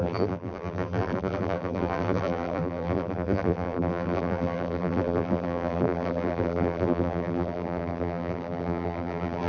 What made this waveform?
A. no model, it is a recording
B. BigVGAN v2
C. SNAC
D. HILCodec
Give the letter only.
B